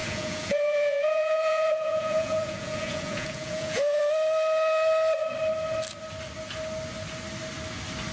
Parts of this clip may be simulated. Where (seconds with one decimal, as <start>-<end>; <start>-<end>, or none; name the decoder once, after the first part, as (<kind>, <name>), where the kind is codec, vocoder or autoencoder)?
0.0-4.0 (vocoder, Vocos)